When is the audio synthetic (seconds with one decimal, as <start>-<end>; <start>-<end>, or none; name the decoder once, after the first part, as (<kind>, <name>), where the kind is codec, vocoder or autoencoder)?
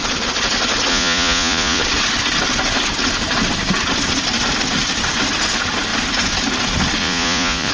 0.9-1.8 (vocoder, Vocos); 7.0-7.7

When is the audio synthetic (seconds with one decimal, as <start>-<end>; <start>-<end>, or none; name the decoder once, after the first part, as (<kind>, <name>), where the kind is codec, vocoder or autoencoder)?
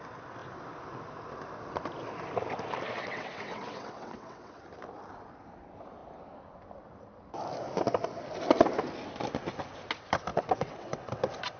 3.0-4.6 (vocoder, WaveNeXt); 10.3-11.1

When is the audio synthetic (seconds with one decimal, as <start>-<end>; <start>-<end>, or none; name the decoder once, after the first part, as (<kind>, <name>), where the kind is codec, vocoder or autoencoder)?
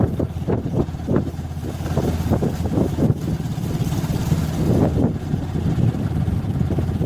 0.0-1.6 (vocoder, BigVGAN v2); 5.0-7.1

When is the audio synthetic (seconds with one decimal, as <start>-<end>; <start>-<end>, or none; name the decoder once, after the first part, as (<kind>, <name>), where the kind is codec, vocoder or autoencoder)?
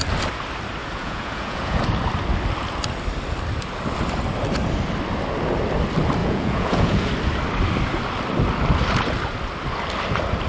0.8-1.8 (vocoder, Vocos); 6.2-7.1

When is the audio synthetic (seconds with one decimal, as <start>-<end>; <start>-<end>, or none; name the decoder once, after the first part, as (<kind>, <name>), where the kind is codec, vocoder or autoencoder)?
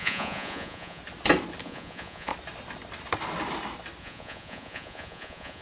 0.0-1.0 (vocoder, Vocos); 1.6-2.3; 4.0-5.6